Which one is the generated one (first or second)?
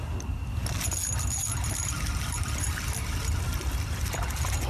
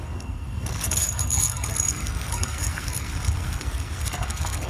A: second